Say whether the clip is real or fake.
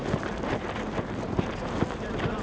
real